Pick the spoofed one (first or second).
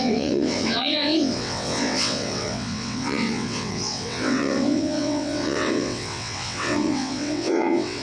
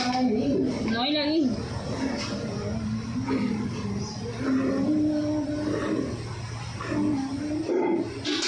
first